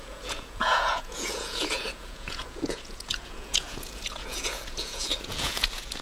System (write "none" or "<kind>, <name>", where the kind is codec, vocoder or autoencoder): vocoder, Vocos